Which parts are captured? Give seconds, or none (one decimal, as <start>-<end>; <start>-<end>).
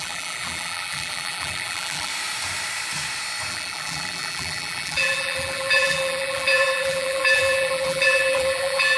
2.1-3.5